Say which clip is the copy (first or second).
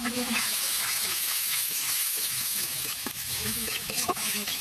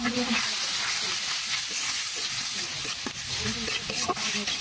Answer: first